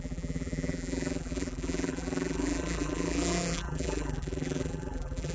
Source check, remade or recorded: remade